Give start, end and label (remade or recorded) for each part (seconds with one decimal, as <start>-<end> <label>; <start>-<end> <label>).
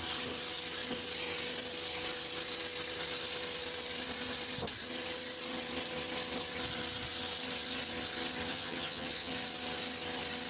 0.0-8.5 recorded; 8.5-9.3 remade; 9.3-10.5 recorded